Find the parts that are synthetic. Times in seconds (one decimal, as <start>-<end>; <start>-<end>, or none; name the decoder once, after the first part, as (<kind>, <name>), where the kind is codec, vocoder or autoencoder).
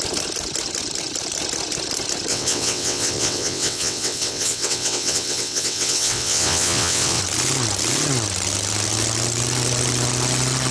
2.3-7.2 (vocoder, WaveNeXt)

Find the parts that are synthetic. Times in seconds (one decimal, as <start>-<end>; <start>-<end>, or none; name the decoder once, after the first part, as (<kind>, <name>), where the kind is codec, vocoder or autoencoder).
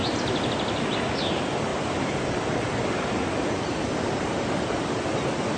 none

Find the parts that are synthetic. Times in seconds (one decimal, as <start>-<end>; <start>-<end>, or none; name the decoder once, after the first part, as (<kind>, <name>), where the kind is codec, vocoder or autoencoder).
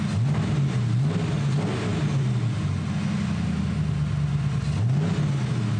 none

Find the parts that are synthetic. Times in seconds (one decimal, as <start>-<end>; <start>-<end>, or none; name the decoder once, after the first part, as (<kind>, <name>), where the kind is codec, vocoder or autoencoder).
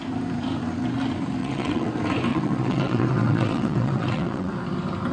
1.4-1.9 (vocoder, WaveNeXt); 2.3-4.5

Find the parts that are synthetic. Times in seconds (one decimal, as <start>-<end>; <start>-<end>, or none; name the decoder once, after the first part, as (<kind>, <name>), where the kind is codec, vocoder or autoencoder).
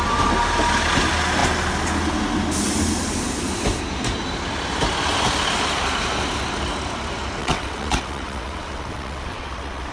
7.4-9.9 (vocoder, WaveNeXt)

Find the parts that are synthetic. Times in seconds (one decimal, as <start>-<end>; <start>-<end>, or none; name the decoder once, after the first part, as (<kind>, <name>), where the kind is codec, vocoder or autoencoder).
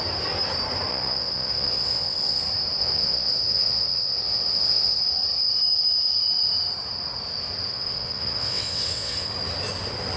0.9-2.4 (vocoder, WaveNeXt); 2.8-5.0; 7.7-9.3